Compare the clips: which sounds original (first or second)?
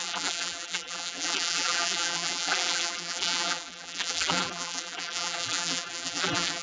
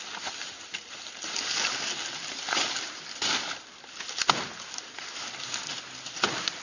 second